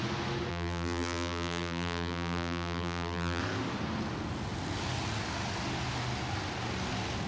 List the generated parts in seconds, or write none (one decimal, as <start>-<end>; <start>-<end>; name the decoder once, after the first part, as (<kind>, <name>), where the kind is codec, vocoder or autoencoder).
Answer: 0.5-3.4 (vocoder, BigVGAN v2)